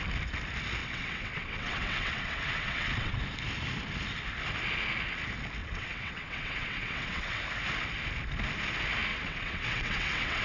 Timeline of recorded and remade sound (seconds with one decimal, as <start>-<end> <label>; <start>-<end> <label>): 0.0-0.8 recorded; 0.8-3.2 remade; 3.2-5.6 recorded; 5.6-7.4 remade; 7.4-9.1 recorded; 9.1-10.4 remade